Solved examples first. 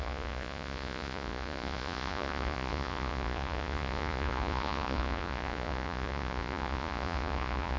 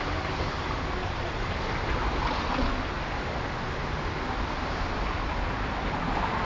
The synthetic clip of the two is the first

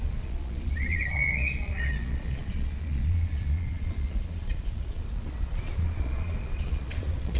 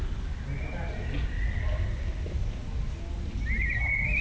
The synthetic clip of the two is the first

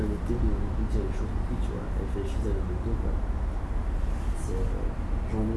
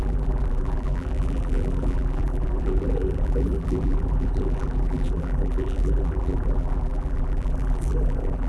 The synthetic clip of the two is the second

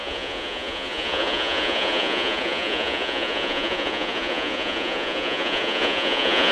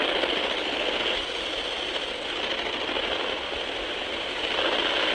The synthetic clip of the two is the first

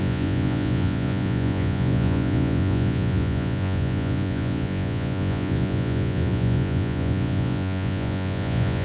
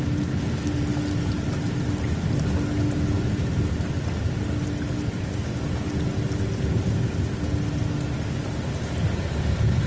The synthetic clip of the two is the first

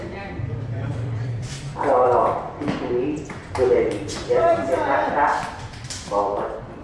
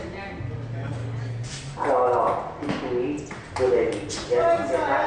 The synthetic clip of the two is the first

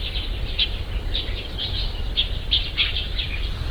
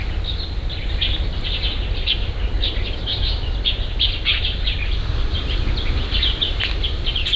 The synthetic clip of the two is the first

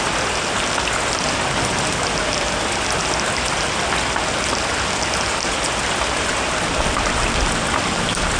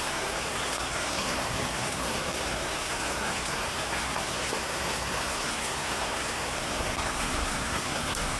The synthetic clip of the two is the second